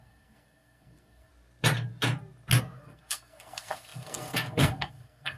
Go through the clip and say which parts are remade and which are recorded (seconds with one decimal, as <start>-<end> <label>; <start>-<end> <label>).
0.0-1.3 remade; 1.3-2.6 recorded; 2.6-5.4 remade